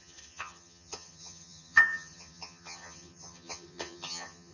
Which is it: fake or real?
fake